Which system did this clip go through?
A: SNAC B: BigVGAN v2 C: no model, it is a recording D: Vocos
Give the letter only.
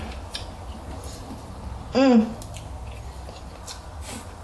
C